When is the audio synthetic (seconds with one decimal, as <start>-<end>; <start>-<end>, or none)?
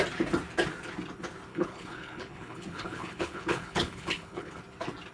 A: 1.5-4.6